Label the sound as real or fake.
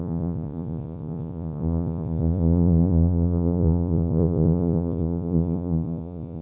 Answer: fake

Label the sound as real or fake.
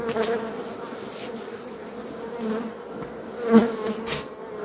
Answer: real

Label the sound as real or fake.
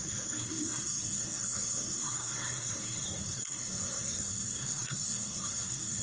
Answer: fake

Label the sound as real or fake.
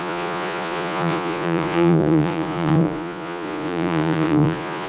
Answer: fake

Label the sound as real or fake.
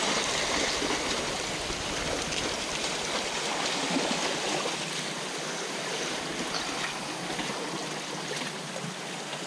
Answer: real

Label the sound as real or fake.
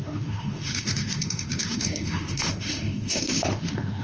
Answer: fake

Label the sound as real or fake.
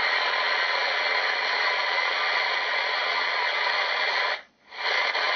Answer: fake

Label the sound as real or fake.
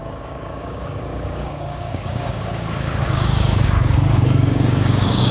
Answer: fake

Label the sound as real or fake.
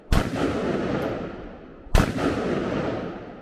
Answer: real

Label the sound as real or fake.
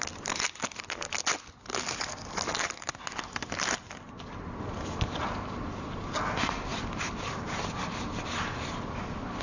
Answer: real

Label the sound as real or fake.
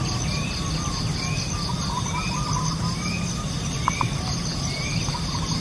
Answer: real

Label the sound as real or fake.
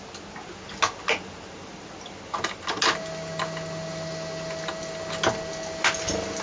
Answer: real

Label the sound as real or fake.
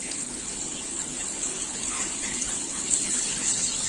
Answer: fake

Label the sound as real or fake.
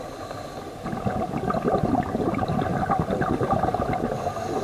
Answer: real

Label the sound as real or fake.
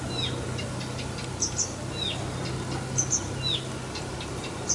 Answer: real